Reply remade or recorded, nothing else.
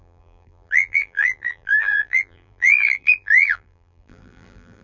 remade